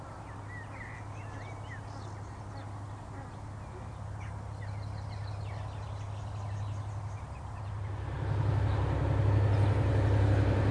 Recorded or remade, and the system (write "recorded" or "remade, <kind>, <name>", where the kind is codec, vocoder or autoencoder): recorded